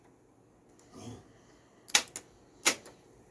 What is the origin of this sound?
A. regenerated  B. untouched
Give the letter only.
B